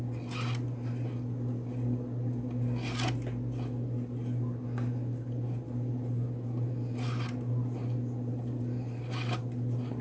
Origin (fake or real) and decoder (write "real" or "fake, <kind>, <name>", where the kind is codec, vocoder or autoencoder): real